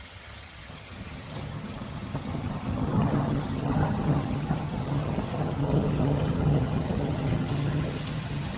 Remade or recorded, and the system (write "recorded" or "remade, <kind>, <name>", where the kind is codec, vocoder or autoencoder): remade, vocoder, HiFi-GAN